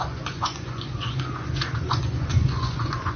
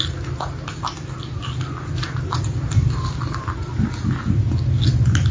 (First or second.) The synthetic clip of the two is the first